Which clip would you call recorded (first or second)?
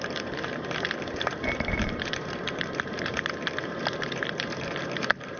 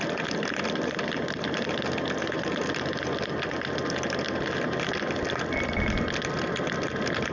second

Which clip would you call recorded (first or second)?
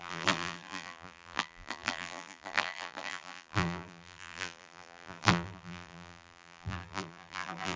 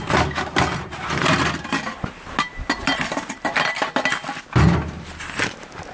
second